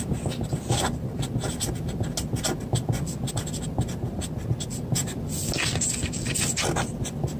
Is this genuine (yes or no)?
yes